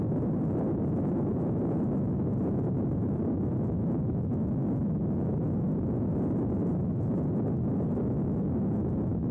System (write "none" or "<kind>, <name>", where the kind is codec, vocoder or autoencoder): vocoder, BigVGAN v2